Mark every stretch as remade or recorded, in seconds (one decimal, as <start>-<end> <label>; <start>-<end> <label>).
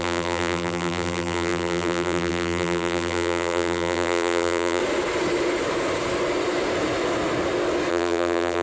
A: 0.0-4.8 remade; 4.8-7.9 recorded; 7.9-8.6 remade